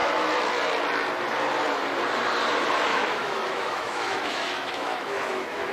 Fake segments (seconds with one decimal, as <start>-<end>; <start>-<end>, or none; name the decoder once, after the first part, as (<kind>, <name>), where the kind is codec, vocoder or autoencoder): 2.9-5.7 (autoencoder, DAC-VAE)